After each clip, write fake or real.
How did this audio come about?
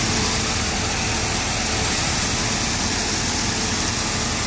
real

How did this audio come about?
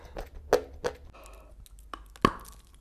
real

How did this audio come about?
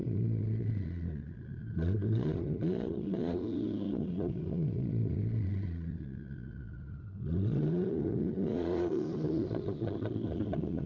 fake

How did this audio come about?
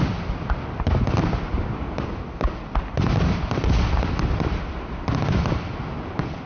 real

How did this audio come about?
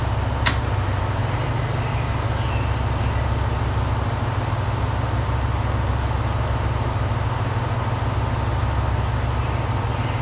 real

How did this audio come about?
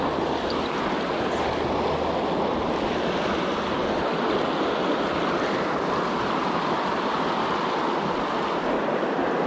real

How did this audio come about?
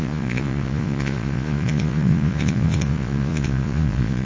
fake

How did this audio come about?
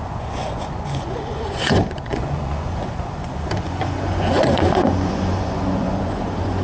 fake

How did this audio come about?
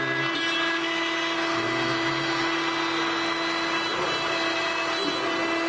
real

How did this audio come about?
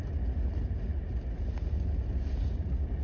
real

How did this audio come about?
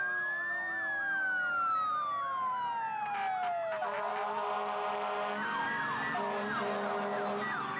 real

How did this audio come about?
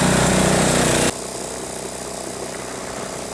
real